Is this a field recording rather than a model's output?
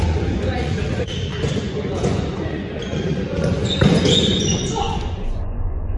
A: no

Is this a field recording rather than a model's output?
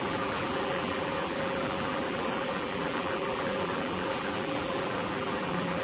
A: no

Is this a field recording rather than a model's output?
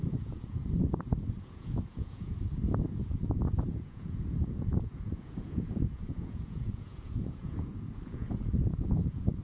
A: no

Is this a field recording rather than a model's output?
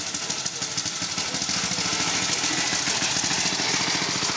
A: yes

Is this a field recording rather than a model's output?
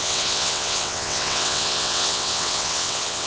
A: no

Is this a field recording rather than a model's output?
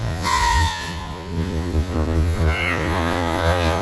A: no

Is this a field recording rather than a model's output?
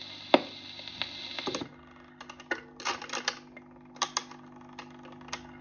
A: yes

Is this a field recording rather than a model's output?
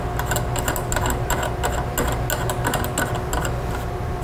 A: yes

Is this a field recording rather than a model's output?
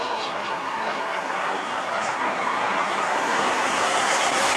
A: no